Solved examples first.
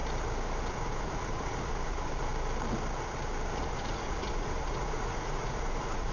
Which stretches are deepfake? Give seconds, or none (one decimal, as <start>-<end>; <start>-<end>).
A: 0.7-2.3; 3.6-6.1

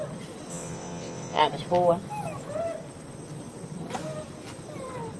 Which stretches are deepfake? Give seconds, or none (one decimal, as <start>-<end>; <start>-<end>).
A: 0.5-1.4

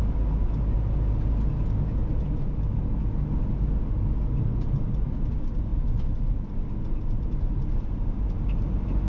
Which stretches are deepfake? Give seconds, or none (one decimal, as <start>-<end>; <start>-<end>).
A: none

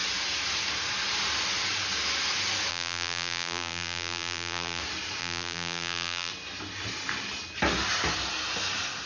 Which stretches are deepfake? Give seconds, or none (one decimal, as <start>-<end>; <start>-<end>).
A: 2.7-4.8; 5.2-6.3